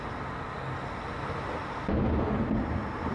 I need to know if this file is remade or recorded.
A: recorded